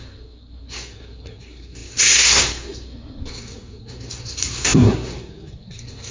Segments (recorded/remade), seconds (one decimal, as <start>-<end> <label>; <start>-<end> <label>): 0.0-6.1 remade